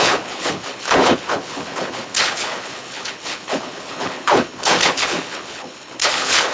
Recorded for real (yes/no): no